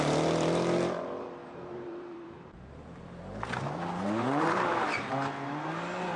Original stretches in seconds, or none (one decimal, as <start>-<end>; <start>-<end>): none